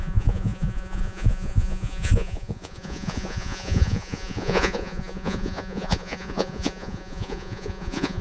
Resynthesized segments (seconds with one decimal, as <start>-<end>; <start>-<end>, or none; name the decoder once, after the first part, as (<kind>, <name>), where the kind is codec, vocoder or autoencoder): 0.0-8.2 (vocoder, Vocos)